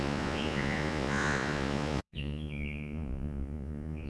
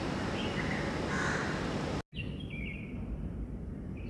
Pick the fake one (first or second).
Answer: first